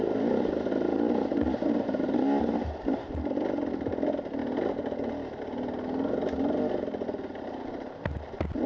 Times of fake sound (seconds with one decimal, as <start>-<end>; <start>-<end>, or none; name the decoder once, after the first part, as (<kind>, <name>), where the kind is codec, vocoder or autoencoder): none